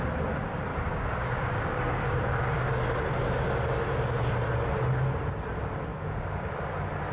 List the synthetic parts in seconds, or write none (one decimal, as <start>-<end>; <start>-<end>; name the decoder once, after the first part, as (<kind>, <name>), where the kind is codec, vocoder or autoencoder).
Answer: 0.7-2.7 (codec, DAC); 5.9-6.5